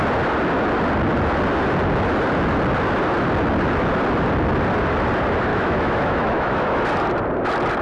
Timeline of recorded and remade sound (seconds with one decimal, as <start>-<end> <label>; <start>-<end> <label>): 0.0-5.5 recorded; 5.5-6.8 remade; 6.8-7.8 recorded